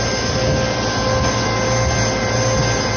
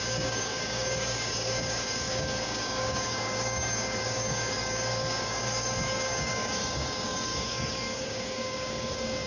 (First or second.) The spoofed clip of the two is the second